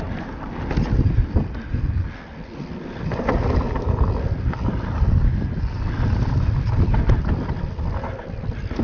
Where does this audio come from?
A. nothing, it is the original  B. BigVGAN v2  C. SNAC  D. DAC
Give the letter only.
A